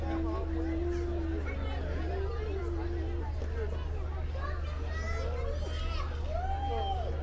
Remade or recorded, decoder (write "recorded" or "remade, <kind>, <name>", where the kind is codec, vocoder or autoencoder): recorded